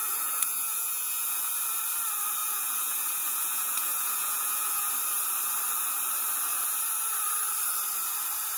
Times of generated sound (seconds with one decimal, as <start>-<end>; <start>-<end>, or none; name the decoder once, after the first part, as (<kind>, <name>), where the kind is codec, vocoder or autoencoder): 0.0-1.6 (vocoder, Vocos); 2.4-4.9